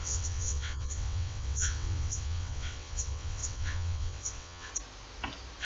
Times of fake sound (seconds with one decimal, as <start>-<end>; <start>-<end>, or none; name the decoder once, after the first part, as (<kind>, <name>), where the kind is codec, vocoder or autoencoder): 0.0-4.7 (vocoder, WaveNeXt)